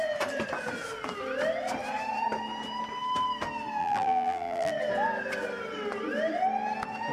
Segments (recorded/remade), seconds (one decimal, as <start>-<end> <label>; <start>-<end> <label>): 0.0-3.8 recorded; 3.8-4.7 remade; 4.7-7.1 recorded